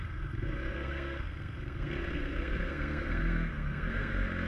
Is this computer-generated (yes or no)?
yes